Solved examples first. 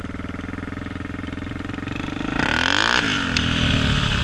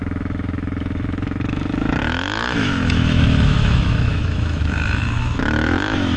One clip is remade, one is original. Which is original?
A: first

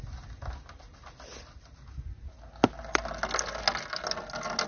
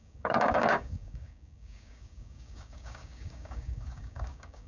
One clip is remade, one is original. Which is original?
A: first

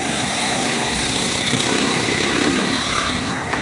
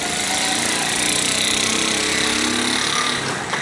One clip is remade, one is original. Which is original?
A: second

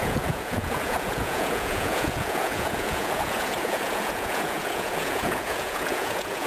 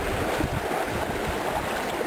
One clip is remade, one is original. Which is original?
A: second